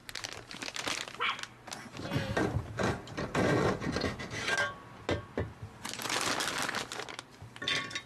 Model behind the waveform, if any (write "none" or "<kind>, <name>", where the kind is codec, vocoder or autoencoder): none